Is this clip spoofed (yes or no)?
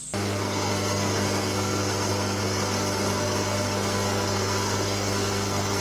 yes